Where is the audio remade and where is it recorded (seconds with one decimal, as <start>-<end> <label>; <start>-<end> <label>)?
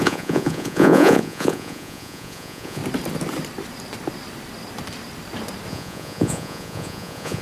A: 0.0-2.8 remade; 2.8-5.7 recorded; 5.7-7.4 remade